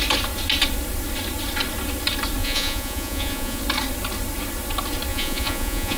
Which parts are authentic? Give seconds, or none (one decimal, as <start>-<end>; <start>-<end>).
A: 0.0-2.4; 3.6-5.1